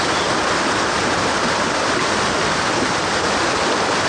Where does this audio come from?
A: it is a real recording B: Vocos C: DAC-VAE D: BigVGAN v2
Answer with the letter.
A